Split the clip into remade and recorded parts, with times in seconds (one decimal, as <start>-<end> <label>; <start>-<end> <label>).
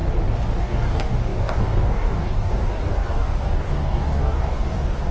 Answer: 0.0-0.6 recorded; 0.6-5.1 remade